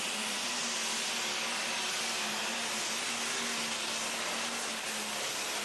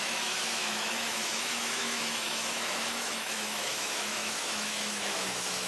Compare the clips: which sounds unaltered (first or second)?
first